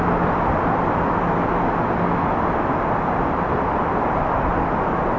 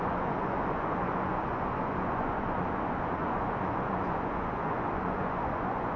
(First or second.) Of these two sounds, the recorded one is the first